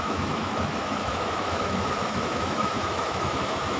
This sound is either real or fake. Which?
fake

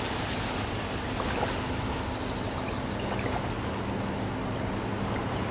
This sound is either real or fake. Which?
real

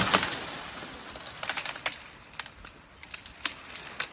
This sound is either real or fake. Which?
real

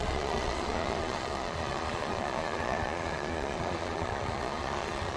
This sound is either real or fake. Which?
fake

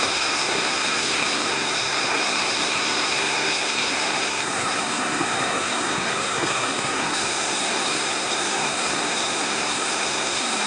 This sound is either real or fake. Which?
fake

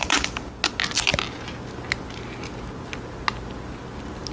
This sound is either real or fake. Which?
real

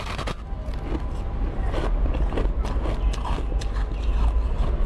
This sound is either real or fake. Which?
real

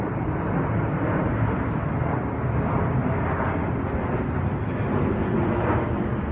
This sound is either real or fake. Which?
real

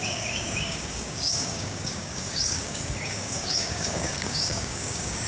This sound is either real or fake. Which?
fake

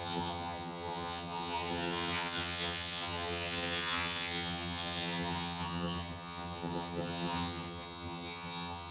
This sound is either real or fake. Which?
fake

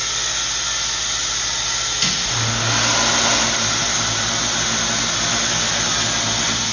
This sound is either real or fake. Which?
real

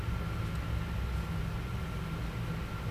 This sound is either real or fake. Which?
real